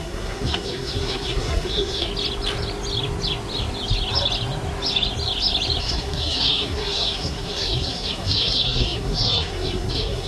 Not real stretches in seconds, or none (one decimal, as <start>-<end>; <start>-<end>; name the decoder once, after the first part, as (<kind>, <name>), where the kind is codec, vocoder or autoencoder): 0.0-2.1 (codec, SNAC); 5.8-10.3